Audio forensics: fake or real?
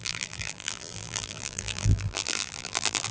fake